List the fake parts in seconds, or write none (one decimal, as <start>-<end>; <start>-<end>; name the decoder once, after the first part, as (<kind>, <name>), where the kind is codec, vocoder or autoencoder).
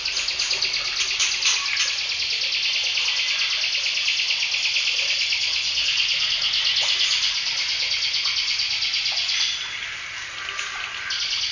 5.5-6.3 (vocoder, Vocos)